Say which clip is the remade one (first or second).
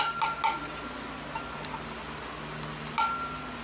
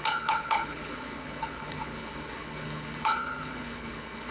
second